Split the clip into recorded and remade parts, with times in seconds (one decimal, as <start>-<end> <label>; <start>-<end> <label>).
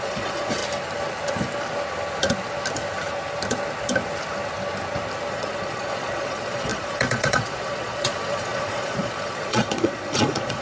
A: 0.0-0.6 remade; 0.6-5.3 recorded; 5.3-10.6 remade